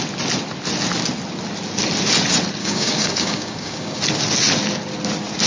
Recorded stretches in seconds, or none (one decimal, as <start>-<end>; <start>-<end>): 0.0-2.6; 4.0-5.5

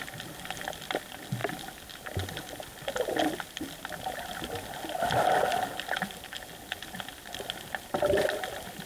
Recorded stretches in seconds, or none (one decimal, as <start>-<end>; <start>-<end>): 0.0-8.9

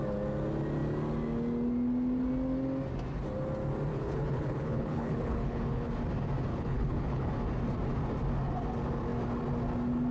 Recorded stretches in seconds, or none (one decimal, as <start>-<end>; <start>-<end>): 0.0-3.9; 5.9-6.5; 7.3-10.1

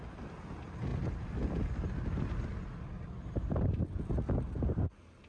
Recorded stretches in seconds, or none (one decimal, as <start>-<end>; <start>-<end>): 0.0-5.3

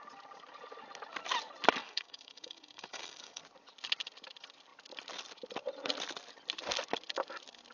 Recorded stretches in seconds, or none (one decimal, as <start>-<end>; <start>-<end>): 0.0-1.8; 3.4-7.7